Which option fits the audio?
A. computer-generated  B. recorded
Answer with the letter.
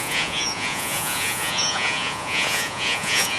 A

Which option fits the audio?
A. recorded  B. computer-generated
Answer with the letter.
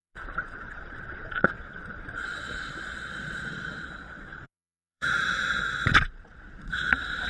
B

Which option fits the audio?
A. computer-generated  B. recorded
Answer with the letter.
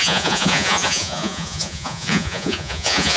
A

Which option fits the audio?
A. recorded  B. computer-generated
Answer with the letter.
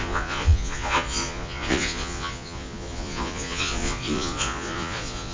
B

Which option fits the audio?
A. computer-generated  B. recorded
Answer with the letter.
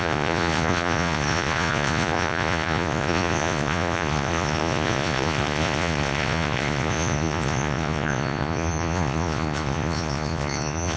A